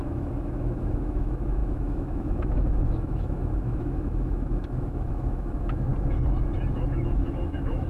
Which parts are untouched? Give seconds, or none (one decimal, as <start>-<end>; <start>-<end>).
5.9-6.9